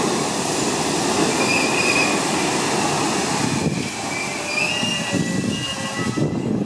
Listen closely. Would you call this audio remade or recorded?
recorded